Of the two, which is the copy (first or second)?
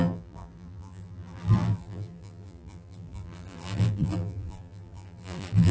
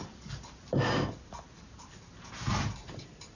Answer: first